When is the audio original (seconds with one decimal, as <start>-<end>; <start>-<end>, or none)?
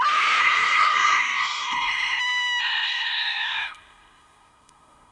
0.0-0.4; 2.2-2.6